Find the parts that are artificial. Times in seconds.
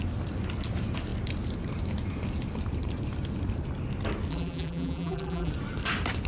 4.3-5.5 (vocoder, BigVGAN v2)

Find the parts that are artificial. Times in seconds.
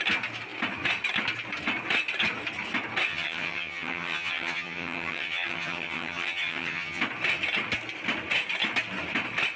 3.1-7.0 (vocoder, HiFi-GAN)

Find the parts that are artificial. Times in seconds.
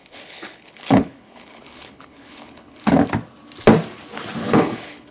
0.0-3.0 (codec, HILCodec); 4.4-5.1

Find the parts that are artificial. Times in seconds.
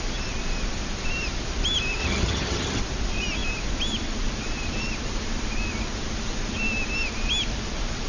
2.0-2.8 (vocoder, HiFi-GAN)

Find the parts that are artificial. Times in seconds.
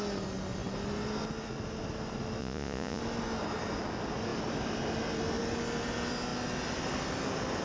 2.4-3.0 (vocoder, Vocos)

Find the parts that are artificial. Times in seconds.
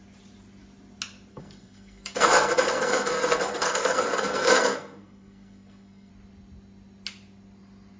1.3-6.1 (codec, SNAC)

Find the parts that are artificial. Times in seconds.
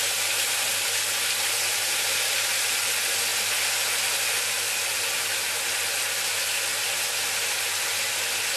none